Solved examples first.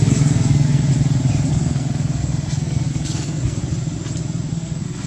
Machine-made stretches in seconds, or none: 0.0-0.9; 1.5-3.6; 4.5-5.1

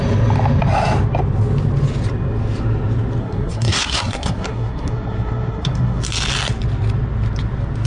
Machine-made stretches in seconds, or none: 3.2-6.0

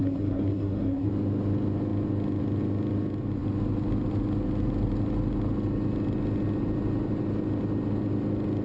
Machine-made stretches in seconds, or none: 0.0-1.1

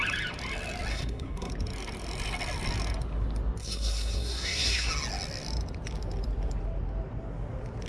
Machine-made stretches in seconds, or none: 0.9-1.5; 3.6-4.9

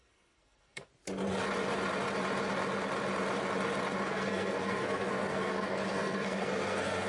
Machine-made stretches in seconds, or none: 0.0-0.9; 4.1-7.1

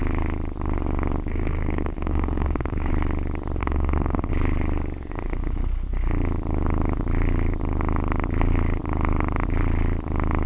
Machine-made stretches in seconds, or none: 1.3-2.9; 3.6-4.3

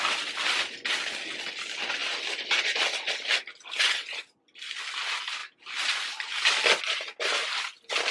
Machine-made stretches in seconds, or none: none